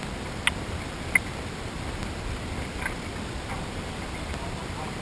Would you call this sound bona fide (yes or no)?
yes